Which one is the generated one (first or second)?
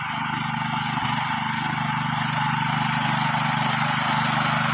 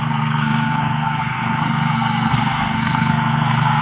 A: second